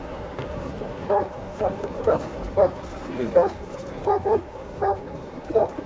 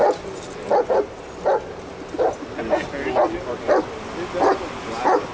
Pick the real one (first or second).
second